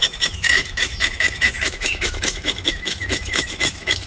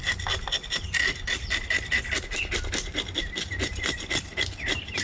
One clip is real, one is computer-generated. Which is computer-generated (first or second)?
first